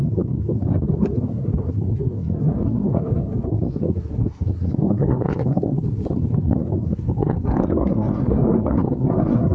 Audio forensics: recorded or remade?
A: remade